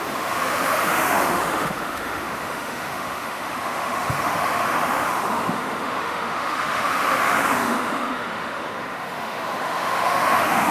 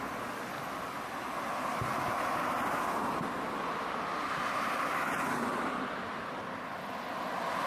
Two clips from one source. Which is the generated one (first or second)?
first